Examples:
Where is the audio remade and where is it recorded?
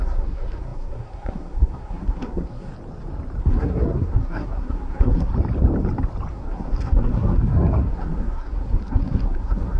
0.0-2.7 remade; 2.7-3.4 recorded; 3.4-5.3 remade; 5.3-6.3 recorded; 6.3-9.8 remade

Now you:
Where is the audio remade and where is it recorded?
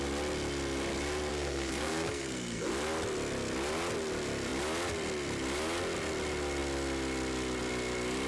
0.0-1.3 recorded; 1.3-2.7 remade; 2.7-8.3 recorded